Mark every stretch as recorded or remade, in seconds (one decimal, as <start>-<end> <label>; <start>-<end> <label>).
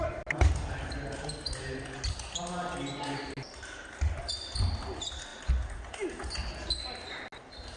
0.0-7.8 recorded